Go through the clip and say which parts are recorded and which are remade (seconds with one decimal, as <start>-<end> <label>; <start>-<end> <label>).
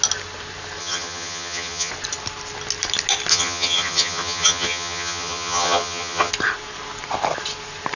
0.0-0.8 recorded; 0.8-1.9 remade; 1.9-3.3 recorded; 3.3-6.3 remade; 6.3-8.0 recorded